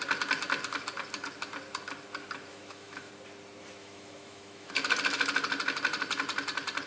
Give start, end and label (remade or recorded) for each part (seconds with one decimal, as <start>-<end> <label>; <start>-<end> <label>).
0.0-2.5 recorded; 2.5-3.1 remade; 3.1-3.8 recorded; 3.8-4.7 remade; 4.7-6.9 recorded